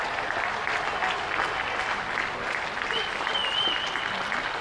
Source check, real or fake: real